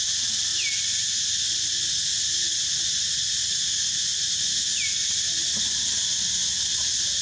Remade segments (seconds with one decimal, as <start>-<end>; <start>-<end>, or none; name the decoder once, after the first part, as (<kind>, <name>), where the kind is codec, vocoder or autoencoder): none